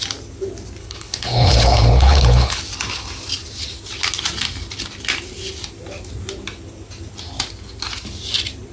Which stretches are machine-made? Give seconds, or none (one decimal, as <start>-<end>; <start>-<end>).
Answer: 0.8-2.6